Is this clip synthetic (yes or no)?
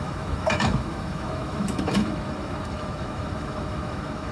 yes